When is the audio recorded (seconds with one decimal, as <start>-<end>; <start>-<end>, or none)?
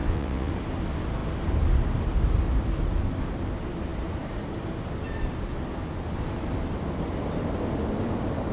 0.5-8.5